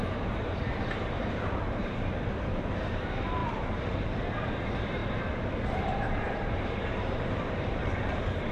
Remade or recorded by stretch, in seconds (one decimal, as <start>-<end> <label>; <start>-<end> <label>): 0.0-8.5 remade